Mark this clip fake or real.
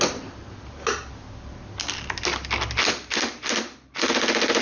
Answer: real